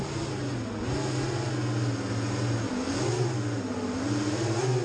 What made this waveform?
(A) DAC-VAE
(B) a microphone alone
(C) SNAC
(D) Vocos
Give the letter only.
B